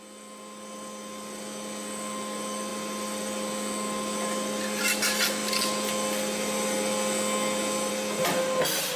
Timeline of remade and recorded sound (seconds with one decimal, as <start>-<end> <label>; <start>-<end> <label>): 0.0-9.0 recorded